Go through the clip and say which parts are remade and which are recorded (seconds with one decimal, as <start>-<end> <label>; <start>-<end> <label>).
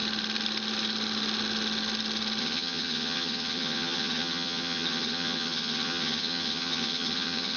0.0-2.4 recorded; 2.4-7.6 remade